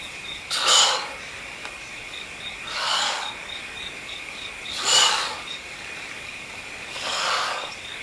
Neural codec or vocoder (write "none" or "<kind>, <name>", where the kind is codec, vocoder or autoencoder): codec, DAC